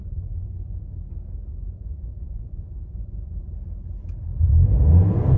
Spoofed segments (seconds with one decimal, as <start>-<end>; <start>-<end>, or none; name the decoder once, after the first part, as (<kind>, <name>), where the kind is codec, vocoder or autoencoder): 0.0-0.8 (vocoder, Vocos); 1.5-3.4